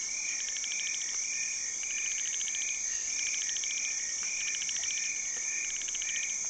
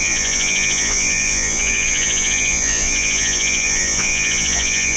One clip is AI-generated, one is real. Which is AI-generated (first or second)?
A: second